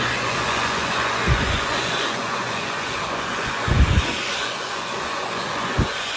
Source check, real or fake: fake